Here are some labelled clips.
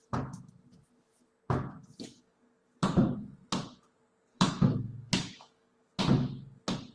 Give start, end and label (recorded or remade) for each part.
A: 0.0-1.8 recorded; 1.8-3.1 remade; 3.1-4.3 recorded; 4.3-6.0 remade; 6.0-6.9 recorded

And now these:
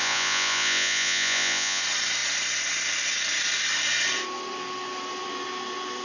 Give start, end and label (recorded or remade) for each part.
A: 0.0-1.8 remade; 1.8-6.0 recorded

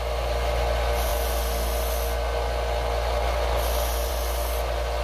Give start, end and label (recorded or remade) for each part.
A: 0.0-5.0 recorded

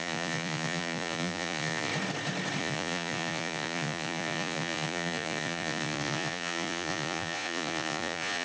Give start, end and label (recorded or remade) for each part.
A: 0.0-1.9 remade; 1.9-2.6 recorded; 2.6-8.4 remade